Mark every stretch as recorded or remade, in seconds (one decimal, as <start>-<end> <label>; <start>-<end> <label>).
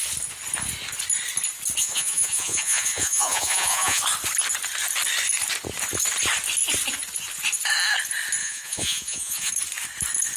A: 0.0-1.8 recorded; 1.8-4.0 remade; 4.0-8.4 recorded; 8.4-9.5 remade; 9.5-10.4 recorded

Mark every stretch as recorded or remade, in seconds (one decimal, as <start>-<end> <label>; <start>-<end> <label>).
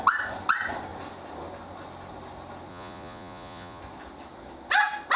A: 0.0-2.7 recorded; 2.7-3.8 remade; 3.8-5.2 recorded